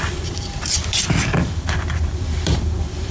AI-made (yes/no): yes